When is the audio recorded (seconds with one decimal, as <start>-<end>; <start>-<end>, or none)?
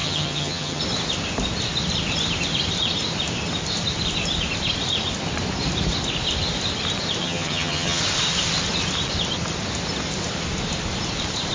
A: 0.8-7.2; 8.0-11.5